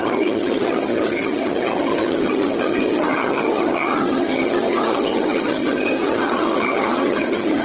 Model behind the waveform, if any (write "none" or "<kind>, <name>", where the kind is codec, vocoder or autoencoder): vocoder, HiFi-GAN